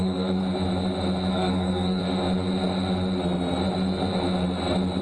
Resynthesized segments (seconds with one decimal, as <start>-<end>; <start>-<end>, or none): 0.0-0.4; 1.3-2.0